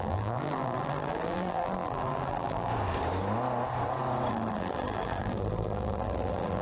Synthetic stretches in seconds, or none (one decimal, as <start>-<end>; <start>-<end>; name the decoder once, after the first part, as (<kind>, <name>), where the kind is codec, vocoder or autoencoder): 0.0-2.7 (vocoder, BigVGAN v2); 4.3-6.6